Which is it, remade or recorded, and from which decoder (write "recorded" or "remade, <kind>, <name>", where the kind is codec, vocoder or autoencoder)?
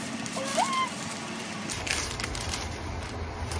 recorded